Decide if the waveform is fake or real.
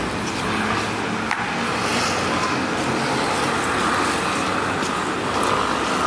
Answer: real